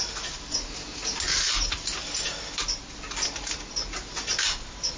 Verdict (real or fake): real